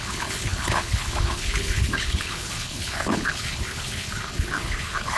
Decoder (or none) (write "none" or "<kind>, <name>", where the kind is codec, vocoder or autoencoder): codec, HILCodec